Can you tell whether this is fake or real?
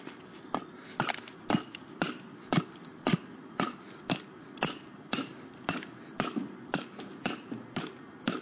real